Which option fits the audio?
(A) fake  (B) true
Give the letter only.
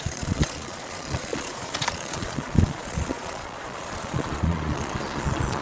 A